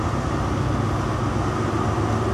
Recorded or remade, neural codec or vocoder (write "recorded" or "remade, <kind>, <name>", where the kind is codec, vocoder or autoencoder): recorded